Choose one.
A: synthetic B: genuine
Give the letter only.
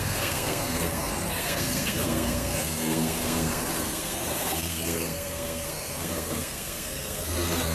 A